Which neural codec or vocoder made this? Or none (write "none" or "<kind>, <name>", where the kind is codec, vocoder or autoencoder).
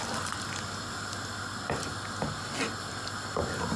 none